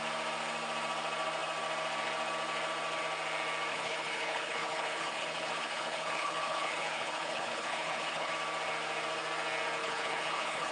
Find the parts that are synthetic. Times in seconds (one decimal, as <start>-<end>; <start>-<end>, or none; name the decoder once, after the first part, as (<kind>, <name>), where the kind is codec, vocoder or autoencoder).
3.7-8.3 (codec, HILCodec); 9.8-10.7